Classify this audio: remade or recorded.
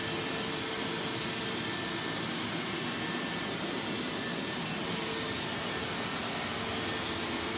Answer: recorded